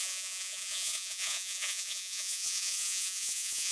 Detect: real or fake fake